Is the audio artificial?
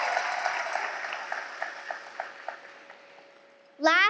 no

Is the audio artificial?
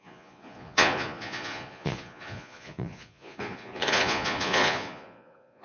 yes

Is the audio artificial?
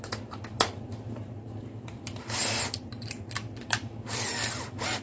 no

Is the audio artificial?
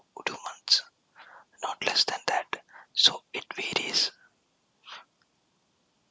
no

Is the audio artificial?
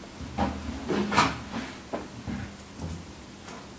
no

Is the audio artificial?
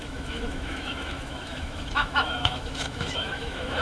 yes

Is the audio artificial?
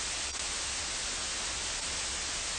no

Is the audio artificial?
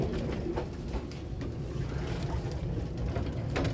no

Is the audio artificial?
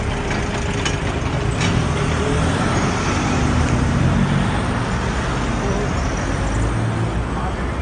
no